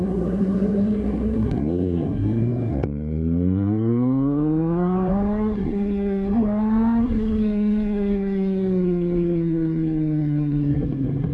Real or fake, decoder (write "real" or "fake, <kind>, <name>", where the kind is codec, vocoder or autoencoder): fake, codec, SNAC